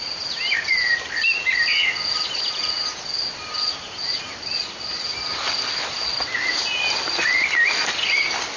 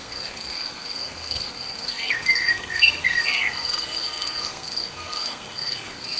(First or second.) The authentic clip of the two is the first